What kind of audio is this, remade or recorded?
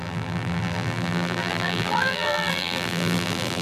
remade